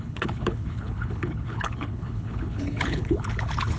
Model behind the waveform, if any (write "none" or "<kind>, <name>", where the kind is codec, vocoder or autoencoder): codec, HILCodec